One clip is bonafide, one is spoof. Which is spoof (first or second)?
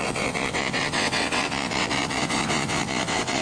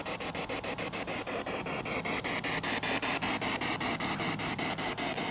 first